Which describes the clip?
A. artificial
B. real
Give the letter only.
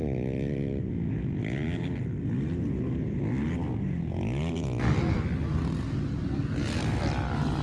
B